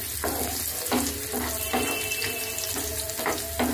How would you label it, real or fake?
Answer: real